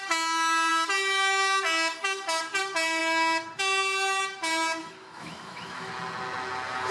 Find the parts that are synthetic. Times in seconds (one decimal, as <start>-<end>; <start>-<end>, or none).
4.8-5.9

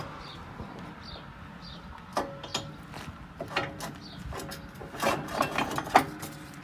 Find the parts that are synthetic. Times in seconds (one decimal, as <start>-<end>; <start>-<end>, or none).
none

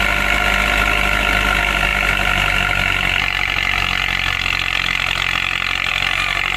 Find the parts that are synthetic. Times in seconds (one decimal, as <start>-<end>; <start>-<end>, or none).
none